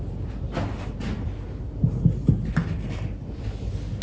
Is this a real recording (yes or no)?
yes